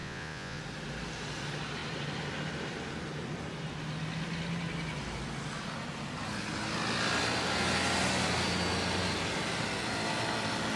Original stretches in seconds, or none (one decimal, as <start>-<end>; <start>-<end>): 0.6-10.8